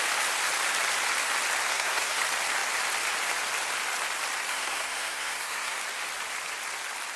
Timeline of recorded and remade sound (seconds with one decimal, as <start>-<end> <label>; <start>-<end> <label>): 0.0-1.7 recorded; 1.7-2.2 remade; 2.2-4.5 recorded; 4.5-5.8 remade; 5.8-7.2 recorded